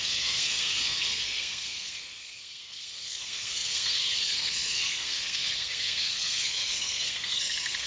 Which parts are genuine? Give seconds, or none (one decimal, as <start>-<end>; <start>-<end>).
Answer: none